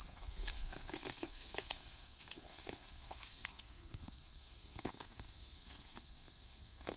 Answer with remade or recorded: remade